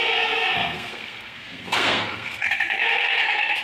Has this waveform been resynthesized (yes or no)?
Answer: yes